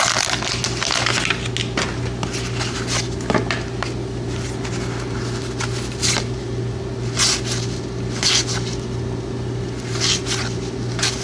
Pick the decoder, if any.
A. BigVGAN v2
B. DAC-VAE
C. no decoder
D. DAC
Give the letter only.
C